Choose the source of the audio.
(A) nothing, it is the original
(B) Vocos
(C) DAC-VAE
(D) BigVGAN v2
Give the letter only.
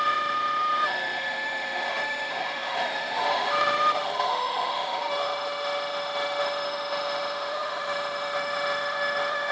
C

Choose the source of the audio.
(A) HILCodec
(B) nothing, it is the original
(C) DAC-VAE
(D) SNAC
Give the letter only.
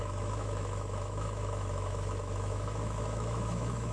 C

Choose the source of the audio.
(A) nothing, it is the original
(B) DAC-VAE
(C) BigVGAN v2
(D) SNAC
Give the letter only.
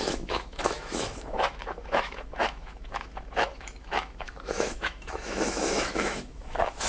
B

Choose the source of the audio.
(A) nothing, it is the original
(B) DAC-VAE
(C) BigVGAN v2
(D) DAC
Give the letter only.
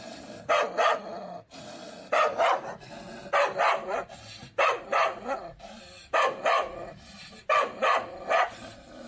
A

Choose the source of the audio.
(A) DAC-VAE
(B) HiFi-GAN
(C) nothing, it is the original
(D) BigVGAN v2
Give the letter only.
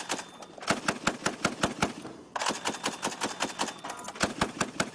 C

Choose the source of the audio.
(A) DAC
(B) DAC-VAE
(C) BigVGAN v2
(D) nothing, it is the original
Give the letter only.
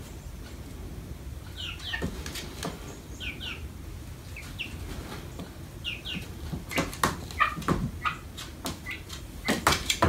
D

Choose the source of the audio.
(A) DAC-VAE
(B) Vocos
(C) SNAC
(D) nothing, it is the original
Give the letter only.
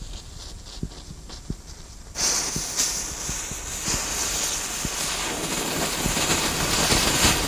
D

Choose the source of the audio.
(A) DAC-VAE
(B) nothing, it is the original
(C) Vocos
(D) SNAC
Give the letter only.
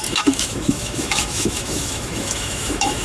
A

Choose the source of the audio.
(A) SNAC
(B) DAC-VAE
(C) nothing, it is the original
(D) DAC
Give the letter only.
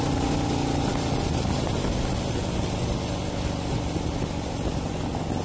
C